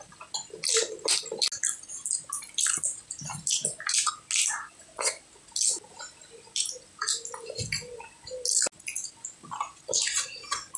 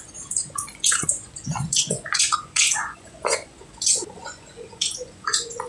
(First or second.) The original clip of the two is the first